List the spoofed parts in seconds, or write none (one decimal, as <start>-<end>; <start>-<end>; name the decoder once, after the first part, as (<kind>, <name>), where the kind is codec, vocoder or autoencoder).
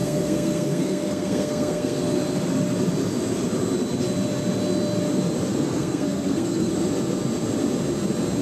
0.0-2.0 (codec, SNAC); 5.5-6.7